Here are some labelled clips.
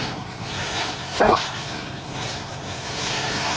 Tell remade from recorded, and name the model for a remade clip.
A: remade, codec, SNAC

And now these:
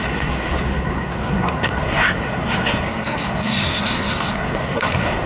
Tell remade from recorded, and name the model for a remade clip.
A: remade, codec, SNAC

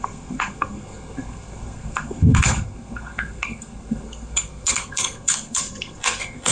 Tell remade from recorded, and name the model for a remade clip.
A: remade, codec, SNAC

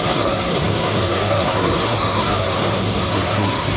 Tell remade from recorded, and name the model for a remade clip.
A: remade, codec, SNAC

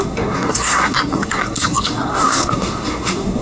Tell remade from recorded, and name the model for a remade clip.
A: remade, codec, SNAC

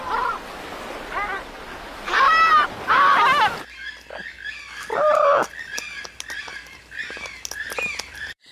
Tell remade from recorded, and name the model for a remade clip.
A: recorded